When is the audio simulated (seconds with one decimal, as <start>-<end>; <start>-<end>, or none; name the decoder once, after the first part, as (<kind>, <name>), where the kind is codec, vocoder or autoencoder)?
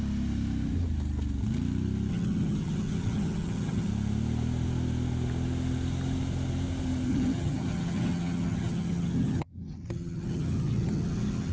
2.1-3.9 (vocoder, HiFi-GAN); 7.1-11.5